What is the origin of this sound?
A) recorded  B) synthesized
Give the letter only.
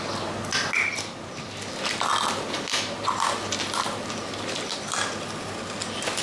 A